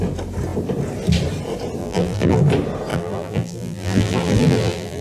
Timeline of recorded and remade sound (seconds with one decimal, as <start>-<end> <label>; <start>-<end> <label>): 0.0-1.8 recorded; 1.8-2.4 remade; 2.4-2.9 recorded; 2.9-5.0 remade